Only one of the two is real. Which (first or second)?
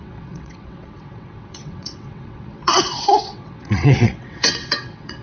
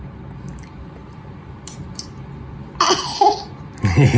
second